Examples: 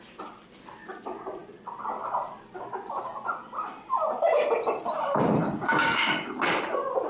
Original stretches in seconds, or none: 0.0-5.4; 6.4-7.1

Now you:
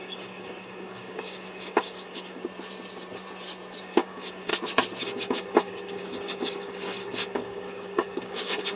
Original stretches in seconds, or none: 2.4-3.8; 4.5-5.0

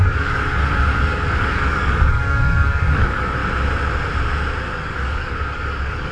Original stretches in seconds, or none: 3.4-4.6

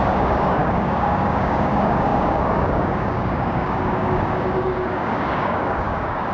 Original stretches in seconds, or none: none